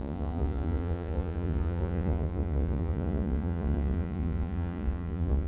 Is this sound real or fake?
fake